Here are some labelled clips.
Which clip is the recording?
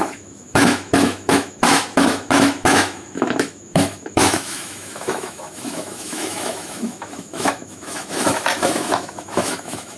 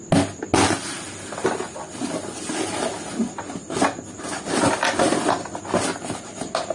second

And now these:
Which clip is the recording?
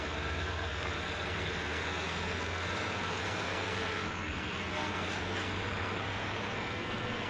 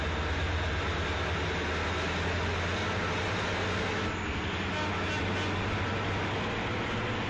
second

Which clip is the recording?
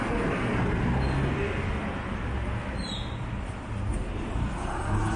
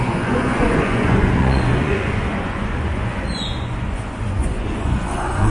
first